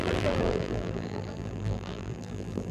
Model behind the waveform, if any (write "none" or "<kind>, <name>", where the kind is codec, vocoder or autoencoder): vocoder, BigVGAN v2